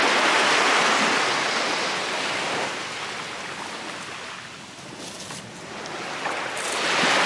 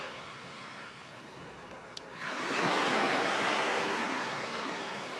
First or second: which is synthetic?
second